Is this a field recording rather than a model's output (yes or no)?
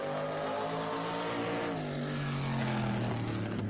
yes